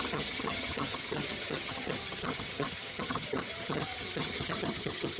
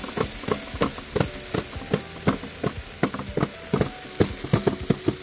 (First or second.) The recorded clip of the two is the second